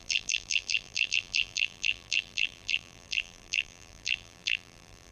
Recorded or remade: remade